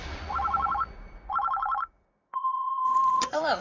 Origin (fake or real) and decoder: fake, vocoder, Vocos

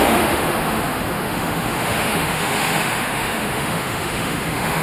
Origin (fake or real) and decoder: fake, autoencoder, DAC-VAE